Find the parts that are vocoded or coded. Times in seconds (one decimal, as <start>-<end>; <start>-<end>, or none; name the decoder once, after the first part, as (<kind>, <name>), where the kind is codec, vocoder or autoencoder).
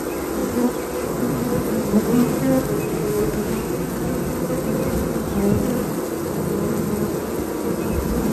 2.9-3.5 (autoencoder, DAC-VAE)